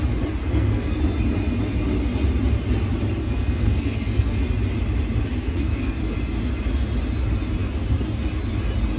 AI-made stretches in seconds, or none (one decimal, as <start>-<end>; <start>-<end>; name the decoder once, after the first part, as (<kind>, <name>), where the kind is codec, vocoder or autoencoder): 0.4-1.0 (codec, SNAC); 3.2-4.4; 5.4-6.0